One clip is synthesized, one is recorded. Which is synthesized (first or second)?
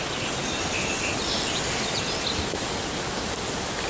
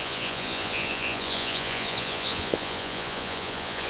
second